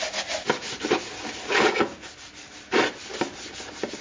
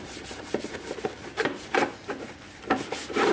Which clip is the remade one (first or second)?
second